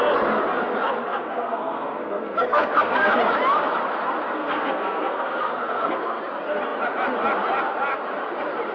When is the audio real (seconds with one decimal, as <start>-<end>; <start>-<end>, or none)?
0.0-1.1; 3.1-4.4; 6.2-8.7